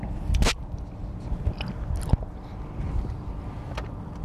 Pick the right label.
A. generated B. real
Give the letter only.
B